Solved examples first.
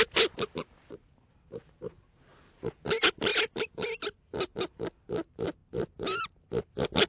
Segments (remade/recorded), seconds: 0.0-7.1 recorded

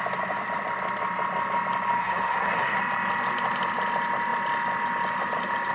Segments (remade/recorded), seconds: 0.0-2.0 recorded; 2.0-2.8 remade; 2.8-5.7 recorded

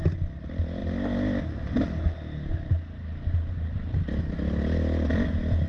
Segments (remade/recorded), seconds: 0.0-5.7 recorded

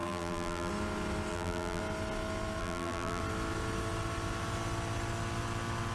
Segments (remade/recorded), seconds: 0.0-0.7 remade; 0.7-1.3 recorded; 1.3-1.8 remade; 1.8-2.6 recorded; 2.6-3.2 remade; 3.2-5.9 recorded

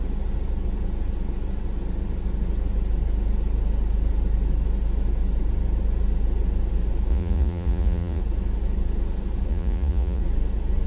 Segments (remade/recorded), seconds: 0.0-7.1 recorded; 7.1-8.2 remade; 8.2-9.5 recorded; 9.5-10.2 remade; 10.2-10.9 recorded